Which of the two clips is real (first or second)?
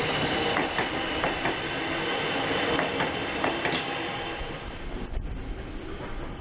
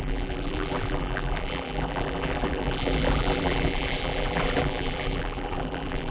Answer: first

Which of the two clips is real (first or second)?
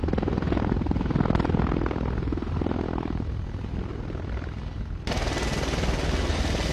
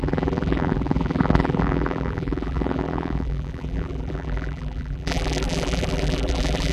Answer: first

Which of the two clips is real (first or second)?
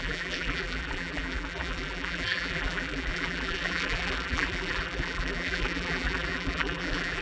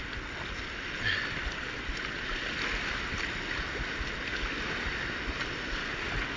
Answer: second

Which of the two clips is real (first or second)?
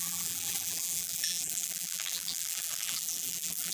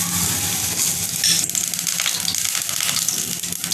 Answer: second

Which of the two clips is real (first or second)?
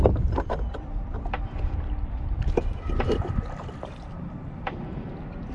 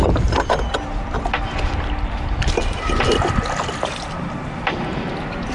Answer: second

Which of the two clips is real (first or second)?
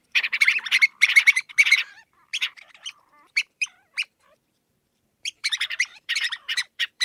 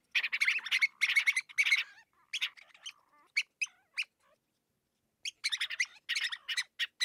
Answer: second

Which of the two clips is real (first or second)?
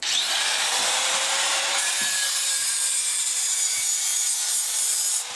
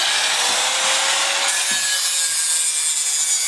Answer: second